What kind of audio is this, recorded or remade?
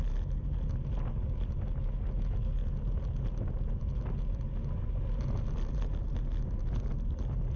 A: recorded